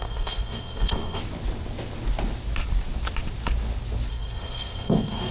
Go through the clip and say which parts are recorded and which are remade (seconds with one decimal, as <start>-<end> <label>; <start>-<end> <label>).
0.0-1.2 remade; 1.2-4.1 recorded; 4.1-5.3 remade